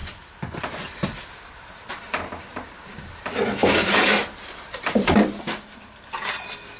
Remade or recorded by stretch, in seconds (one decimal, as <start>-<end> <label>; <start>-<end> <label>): 0.0-0.6 remade; 0.6-2.5 recorded; 2.5-3.1 remade; 3.1-3.6 recorded; 3.6-5.1 remade; 5.1-6.8 recorded